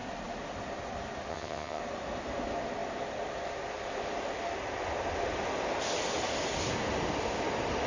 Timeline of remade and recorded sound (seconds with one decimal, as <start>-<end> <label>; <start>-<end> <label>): 0.0-1.3 recorded; 1.3-1.8 remade; 1.8-7.9 recorded